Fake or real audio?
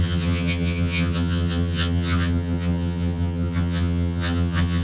fake